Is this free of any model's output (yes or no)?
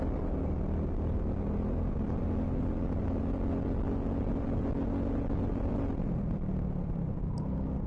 yes